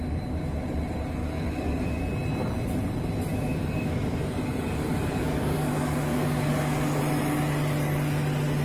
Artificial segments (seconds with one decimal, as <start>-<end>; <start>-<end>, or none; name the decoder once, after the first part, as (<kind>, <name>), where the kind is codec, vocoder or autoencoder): 1.2-2.0 (codec, DAC); 3.3-7.0